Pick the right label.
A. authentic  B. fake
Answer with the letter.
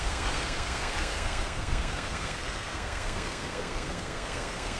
B